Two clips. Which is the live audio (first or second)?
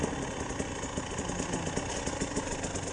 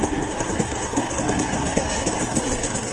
first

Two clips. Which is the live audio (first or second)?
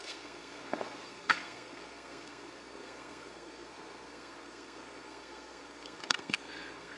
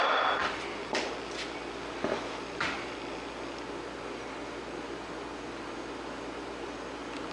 second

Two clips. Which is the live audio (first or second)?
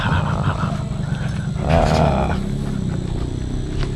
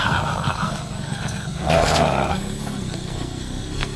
first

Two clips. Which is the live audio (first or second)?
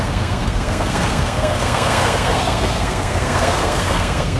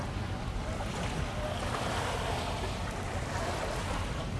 second